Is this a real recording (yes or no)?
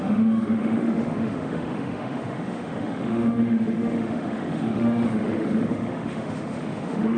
no